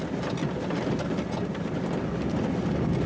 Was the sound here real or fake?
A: real